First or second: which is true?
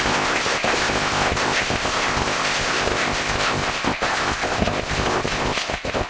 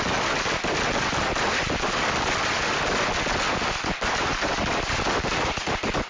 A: second